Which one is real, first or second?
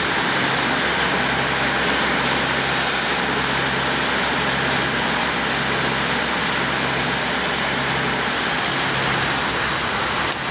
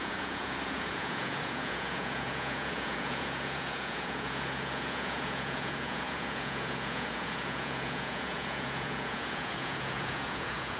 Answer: first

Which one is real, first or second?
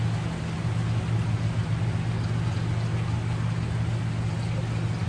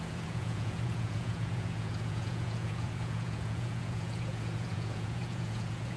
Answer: first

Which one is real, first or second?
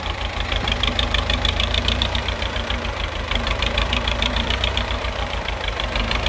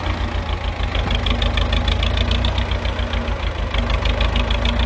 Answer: second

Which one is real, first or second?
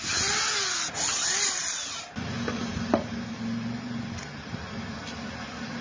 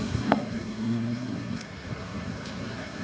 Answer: first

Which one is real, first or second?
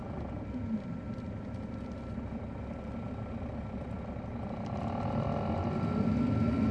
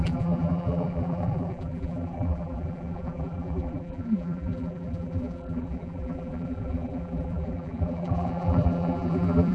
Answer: first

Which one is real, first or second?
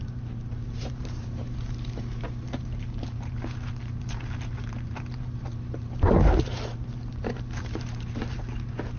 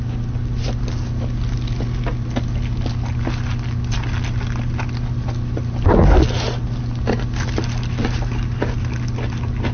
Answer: second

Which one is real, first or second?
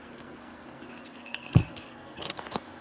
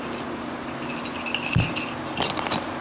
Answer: second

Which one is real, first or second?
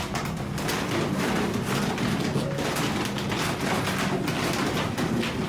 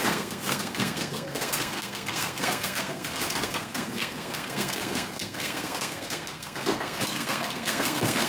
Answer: first